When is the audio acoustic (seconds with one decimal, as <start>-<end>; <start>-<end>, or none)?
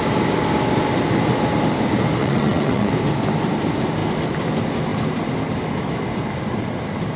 0.0-2.2; 2.9-7.2